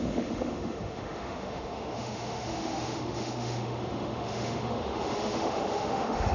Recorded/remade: remade